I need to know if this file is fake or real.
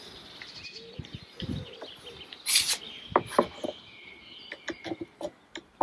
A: real